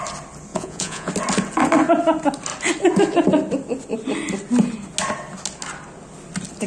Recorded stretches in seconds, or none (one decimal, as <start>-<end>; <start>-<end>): 0.0-0.5; 1.1-6.7